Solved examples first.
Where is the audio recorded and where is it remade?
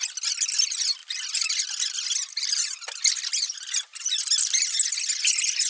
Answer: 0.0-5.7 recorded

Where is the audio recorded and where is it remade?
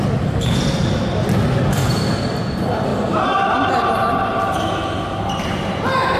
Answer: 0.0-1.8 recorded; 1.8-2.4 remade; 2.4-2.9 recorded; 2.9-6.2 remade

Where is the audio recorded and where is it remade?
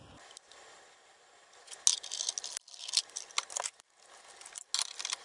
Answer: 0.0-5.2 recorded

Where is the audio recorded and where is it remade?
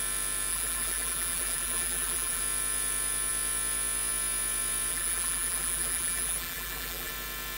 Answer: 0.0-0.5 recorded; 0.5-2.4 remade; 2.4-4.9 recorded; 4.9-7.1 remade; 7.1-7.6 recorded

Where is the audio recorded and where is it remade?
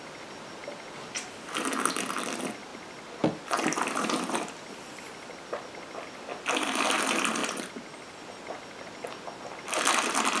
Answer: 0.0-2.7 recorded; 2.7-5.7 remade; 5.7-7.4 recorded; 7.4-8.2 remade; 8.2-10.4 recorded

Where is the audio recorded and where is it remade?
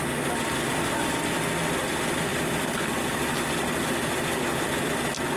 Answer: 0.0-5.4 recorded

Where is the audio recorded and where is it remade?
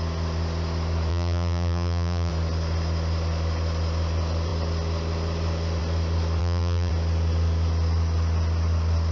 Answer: 0.0-1.1 recorded; 1.1-2.3 remade; 2.3-6.4 recorded; 6.4-6.9 remade; 6.9-9.1 recorded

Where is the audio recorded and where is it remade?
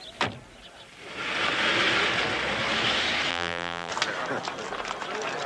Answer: 0.0-3.3 recorded; 3.3-3.9 remade; 3.9-5.5 recorded